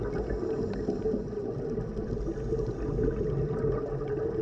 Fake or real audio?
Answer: real